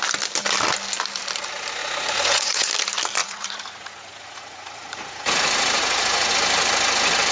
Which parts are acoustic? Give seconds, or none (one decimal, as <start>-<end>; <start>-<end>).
0.0-1.8; 2.7-3.2; 6.3-7.3